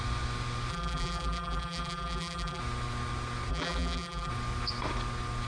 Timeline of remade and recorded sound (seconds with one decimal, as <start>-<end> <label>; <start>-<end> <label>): 0.0-0.7 recorded; 0.7-2.6 remade; 2.6-3.5 recorded; 3.5-4.3 remade; 4.3-5.5 recorded